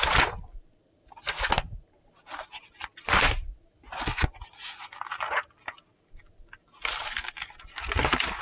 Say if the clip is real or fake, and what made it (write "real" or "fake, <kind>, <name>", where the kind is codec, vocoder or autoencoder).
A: real